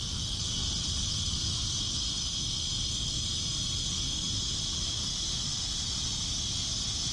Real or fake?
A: fake